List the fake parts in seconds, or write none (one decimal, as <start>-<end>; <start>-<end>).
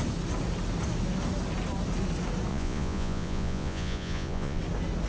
2.5-4.6